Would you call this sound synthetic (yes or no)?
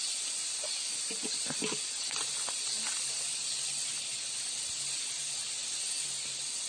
no